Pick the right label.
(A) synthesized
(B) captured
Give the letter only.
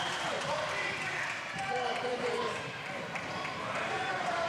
A